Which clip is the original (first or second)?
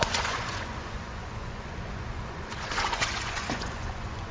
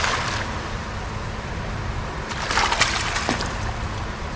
second